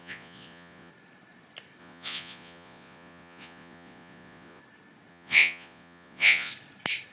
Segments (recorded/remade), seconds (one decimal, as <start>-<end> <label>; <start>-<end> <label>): 0.0-0.9 remade; 0.9-1.8 recorded; 1.8-4.6 remade; 4.6-5.1 recorded; 5.1-6.5 remade; 6.5-7.1 recorded